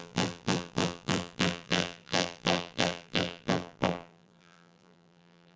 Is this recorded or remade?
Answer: remade